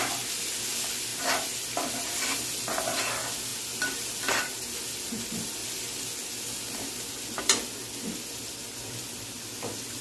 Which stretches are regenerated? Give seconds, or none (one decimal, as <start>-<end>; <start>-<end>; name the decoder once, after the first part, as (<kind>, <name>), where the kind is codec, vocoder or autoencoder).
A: none